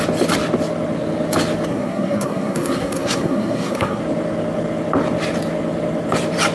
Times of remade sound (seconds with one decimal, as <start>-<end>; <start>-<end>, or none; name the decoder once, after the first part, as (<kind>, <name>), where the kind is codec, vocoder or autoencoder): 1.7-4.0 (codec, SNAC)